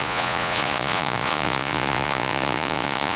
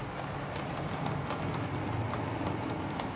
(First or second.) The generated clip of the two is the first